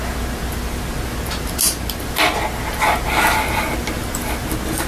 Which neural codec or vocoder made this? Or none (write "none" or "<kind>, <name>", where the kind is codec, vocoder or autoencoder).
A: none